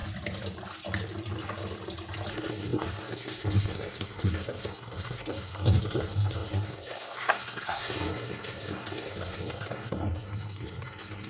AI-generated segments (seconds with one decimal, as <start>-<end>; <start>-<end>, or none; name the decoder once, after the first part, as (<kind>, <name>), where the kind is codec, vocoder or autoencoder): 2.3-11.3 (codec, SNAC)